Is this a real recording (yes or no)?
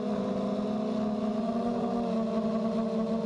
yes